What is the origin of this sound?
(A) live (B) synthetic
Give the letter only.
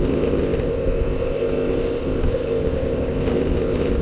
B